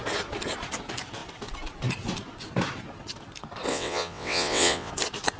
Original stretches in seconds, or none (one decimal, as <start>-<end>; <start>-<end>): 0.0-3.7; 4.9-5.4